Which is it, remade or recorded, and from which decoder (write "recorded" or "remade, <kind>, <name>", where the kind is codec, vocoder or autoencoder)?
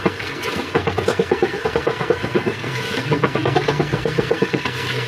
remade, codec, SNAC